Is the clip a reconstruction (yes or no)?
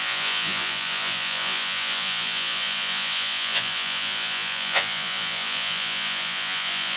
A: yes